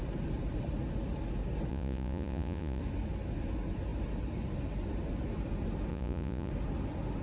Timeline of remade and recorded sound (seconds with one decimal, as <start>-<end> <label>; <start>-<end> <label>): 0.0-1.7 recorded; 1.7-2.8 remade; 2.8-5.9 recorded; 5.9-6.5 remade; 6.5-7.2 recorded